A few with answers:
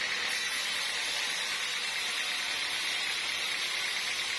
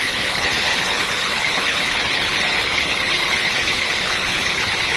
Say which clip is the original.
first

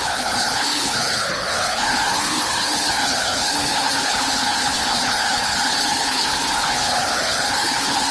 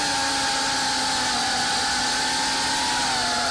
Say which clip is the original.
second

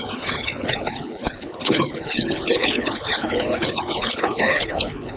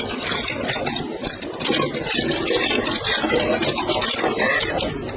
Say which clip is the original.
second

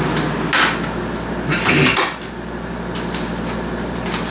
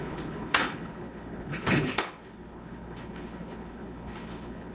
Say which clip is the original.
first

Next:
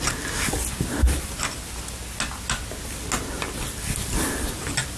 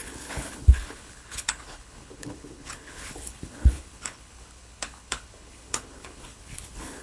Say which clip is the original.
first